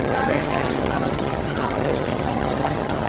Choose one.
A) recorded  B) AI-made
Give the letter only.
B